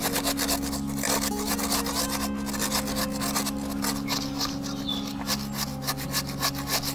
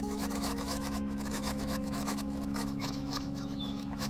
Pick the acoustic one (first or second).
first